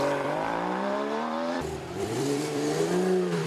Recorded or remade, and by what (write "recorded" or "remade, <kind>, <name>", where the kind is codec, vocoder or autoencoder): remade, vocoder, BigVGAN v2